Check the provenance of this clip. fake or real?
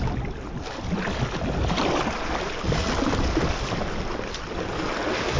real